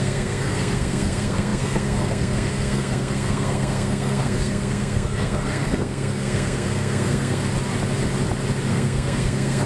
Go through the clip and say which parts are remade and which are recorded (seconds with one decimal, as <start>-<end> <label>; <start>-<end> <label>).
0.0-7.4 remade; 7.4-8.7 recorded; 8.7-9.7 remade